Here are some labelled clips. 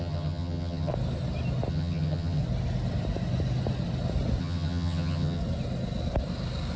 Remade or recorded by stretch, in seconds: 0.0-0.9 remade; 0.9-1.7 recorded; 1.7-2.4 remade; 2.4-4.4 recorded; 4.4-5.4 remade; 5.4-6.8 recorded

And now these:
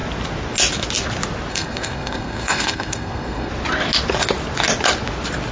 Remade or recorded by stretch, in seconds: 0.0-1.5 recorded; 1.5-3.5 remade; 3.5-5.5 recorded

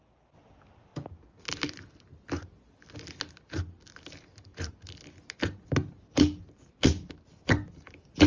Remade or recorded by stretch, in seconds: 0.0-8.3 recorded

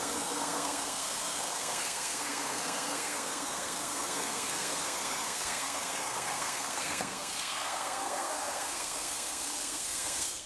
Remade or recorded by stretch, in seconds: 0.0-10.5 remade

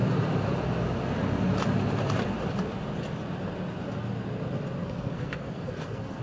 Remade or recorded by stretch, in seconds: 0.0-4.8 recorded; 4.8-6.2 remade

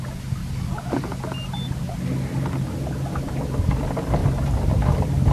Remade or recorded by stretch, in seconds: 0.0-5.3 recorded